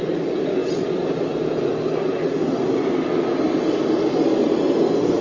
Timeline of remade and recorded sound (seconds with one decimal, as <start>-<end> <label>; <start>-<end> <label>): 0.0-5.2 recorded